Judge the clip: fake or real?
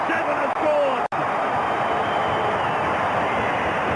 real